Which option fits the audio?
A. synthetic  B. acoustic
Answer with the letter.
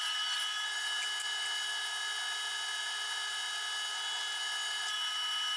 B